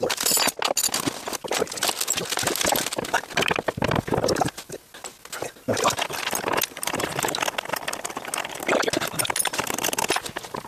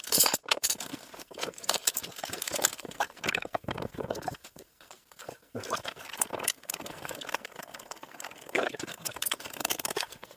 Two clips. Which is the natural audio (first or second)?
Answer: first